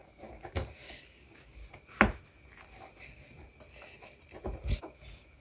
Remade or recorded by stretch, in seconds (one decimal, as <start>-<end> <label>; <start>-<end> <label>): 0.0-1.6 remade; 1.6-4.8 recorded; 4.8-5.4 remade